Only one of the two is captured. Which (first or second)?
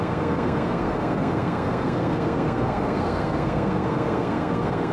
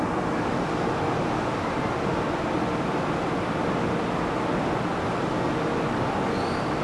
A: second